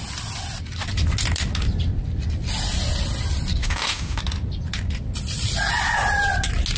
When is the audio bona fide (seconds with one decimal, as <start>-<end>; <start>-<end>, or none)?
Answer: 0.0-3.6; 4.2-6.8